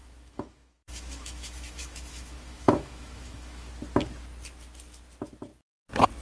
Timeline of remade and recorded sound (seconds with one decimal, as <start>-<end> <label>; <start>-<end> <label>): 0.0-3.7 remade; 3.7-6.2 recorded